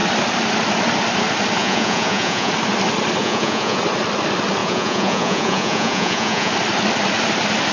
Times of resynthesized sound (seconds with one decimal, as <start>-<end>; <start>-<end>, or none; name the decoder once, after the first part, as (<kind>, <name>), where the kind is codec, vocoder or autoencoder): 1.6-2.5 (vocoder, Vocos); 3.2-3.8; 4.6-6.5